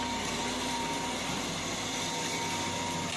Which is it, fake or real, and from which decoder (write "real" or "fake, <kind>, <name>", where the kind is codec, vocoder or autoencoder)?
real